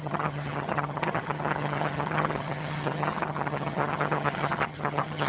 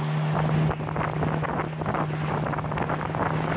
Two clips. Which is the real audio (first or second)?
second